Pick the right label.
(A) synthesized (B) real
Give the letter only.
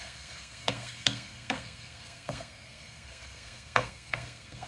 A